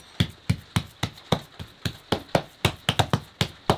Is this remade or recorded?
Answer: recorded